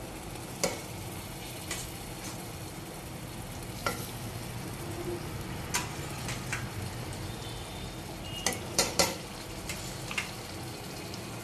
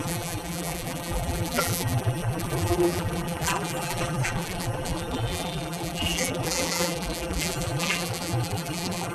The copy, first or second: second